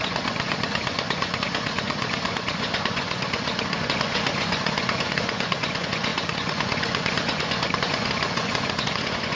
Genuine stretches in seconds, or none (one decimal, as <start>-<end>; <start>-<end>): none